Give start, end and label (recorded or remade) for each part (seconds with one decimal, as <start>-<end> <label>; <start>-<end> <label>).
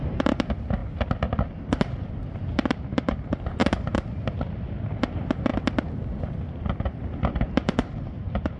0.0-0.8 remade; 0.8-2.2 recorded; 2.2-5.5 remade; 5.5-6.8 recorded; 6.8-8.6 remade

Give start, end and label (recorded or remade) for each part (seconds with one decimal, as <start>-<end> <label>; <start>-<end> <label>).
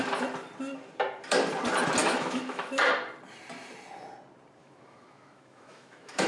0.0-2.0 recorded; 2.0-2.9 remade; 2.9-4.6 recorded; 4.6-6.3 remade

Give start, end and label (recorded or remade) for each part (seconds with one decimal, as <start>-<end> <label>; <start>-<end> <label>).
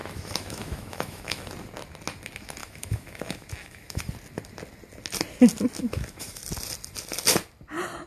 0.0-1.5 remade; 1.5-2.6 recorded; 2.6-4.0 remade; 4.0-5.8 recorded; 5.8-6.4 remade; 6.4-8.1 recorded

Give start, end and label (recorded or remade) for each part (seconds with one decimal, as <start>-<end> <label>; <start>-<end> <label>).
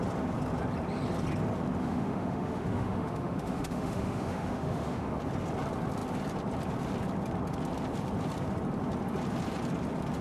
0.0-1.8 recorded; 1.8-5.2 remade; 5.2-10.2 recorded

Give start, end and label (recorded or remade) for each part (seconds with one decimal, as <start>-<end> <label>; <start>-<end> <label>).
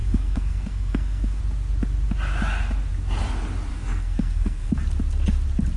0.0-1.4 remade; 1.4-3.7 recorded; 3.7-4.7 remade; 4.7-5.8 recorded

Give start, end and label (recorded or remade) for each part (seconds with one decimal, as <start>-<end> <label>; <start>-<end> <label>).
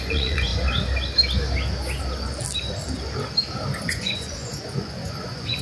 0.0-0.5 remade; 0.5-3.9 recorded; 3.9-5.6 remade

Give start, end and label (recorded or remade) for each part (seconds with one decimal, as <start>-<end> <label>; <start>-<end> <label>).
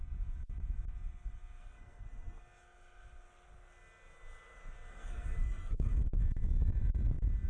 0.0-1.6 recorded; 1.6-2.4 remade; 2.4-4.9 recorded; 4.9-5.9 remade; 5.9-7.5 recorded